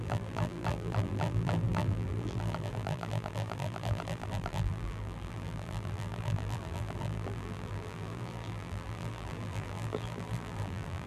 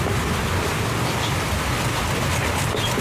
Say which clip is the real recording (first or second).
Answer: second